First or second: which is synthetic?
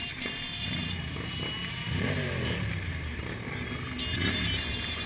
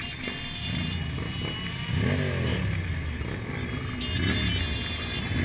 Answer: first